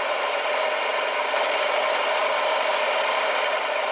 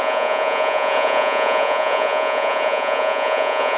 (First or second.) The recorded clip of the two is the first